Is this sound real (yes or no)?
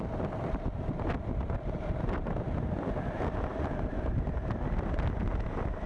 yes